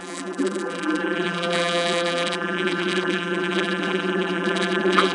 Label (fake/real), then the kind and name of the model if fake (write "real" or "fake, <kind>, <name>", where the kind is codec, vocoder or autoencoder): fake, vocoder, BigVGAN v2